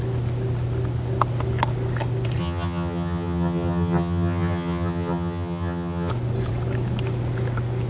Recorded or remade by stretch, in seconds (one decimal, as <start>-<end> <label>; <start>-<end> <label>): 0.0-2.4 recorded; 2.4-6.1 remade; 6.1-7.9 recorded